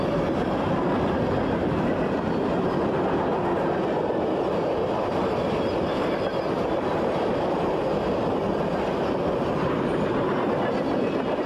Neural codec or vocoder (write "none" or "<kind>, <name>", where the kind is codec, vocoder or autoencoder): none